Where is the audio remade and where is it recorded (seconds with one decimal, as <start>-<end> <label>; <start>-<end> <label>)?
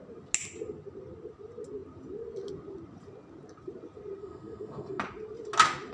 0.0-4.2 recorded; 4.2-5.0 remade; 5.0-5.9 recorded